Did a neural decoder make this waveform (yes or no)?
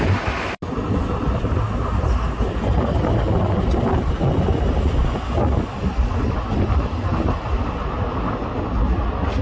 no